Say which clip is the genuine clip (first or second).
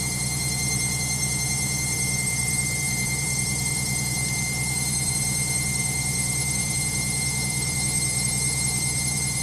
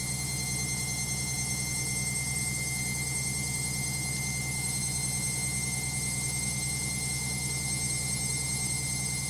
second